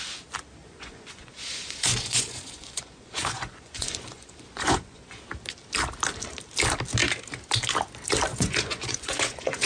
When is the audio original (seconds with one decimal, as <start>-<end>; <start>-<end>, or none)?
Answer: 0.0-0.6; 5.2-8.3